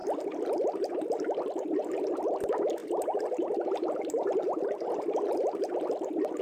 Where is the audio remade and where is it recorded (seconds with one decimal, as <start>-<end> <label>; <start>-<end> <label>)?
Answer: 0.0-6.4 remade